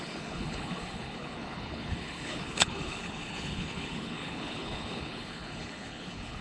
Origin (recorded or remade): remade